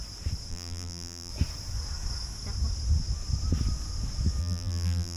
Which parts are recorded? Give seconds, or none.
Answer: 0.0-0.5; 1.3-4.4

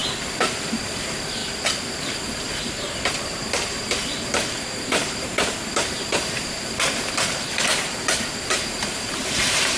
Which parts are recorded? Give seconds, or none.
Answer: 0.0-0.8; 1.4-2.0

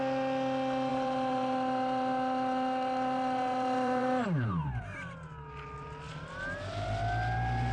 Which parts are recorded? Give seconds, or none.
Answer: 0.0-0.9; 4.8-7.7

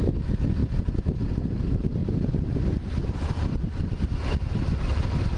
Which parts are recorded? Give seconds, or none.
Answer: 0.0-5.4

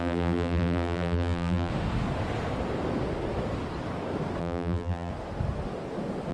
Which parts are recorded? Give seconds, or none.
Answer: 1.7-4.4; 5.1-6.3